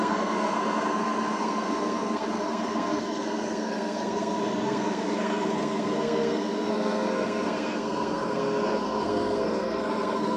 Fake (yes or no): yes